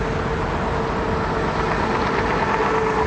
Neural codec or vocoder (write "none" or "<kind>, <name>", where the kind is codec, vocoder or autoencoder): none